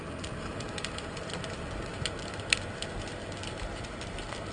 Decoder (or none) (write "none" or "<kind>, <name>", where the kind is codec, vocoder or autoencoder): none